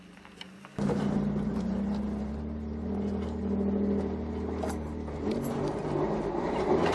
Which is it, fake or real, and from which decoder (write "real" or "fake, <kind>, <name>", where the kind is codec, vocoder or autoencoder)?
real